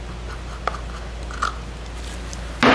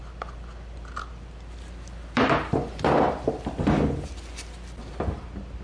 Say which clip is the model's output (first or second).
second